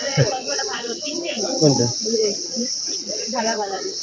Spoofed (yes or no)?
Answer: yes